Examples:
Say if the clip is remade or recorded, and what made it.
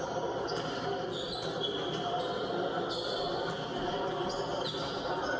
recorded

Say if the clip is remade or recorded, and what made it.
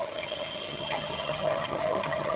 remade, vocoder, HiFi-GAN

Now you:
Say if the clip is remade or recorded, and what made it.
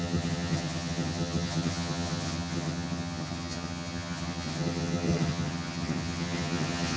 remade, vocoder, HiFi-GAN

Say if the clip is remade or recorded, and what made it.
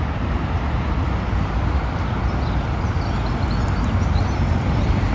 recorded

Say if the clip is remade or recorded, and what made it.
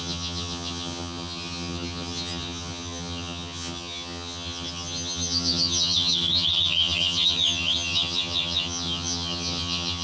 remade, vocoder, HiFi-GAN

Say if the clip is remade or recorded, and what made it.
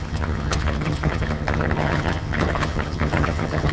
remade, vocoder, HiFi-GAN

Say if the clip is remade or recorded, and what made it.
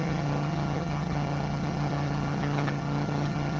remade, vocoder, HiFi-GAN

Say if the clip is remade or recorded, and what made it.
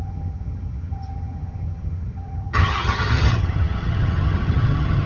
remade, vocoder, HiFi-GAN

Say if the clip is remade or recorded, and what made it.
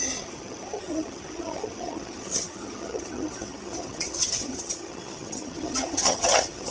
remade, vocoder, HiFi-GAN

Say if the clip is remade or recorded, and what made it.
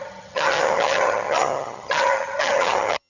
remade, vocoder, HiFi-GAN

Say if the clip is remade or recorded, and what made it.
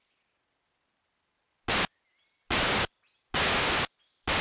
recorded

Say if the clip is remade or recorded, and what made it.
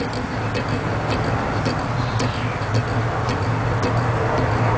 recorded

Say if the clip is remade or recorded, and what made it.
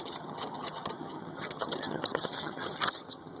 remade, vocoder, HiFi-GAN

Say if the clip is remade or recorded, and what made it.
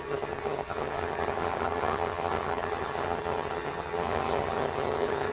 remade, vocoder, HiFi-GAN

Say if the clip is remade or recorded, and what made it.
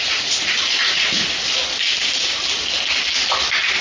recorded